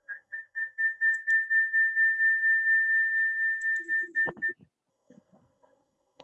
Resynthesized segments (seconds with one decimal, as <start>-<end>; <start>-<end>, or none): 0.0-1.2; 4.9-6.2